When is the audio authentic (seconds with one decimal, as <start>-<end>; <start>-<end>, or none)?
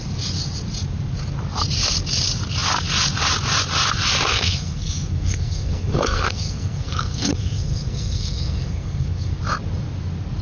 0.0-4.3; 9.4-10.4